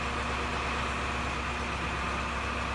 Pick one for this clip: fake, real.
real